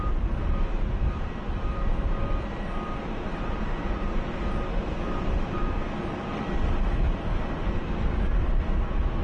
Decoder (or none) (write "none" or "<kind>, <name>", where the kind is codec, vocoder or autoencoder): none